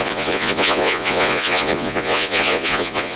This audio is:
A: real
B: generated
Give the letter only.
B